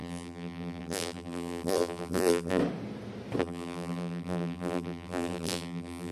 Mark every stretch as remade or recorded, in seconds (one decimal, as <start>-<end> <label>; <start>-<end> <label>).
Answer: 0.0-2.6 remade; 2.6-3.4 recorded; 3.4-6.1 remade